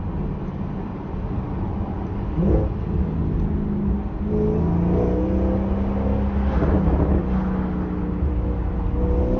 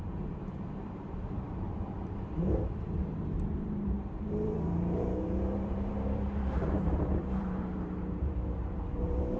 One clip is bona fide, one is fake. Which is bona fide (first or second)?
first